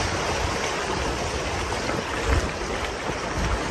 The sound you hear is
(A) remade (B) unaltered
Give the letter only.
B